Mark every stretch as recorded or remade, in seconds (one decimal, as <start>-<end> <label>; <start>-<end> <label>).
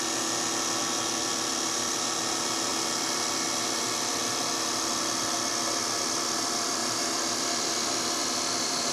0.0-8.9 recorded